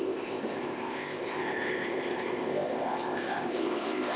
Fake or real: fake